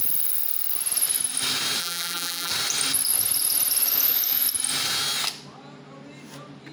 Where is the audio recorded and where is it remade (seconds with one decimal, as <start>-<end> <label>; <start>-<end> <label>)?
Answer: 0.0-1.8 recorded; 1.8-2.5 remade; 2.5-6.7 recorded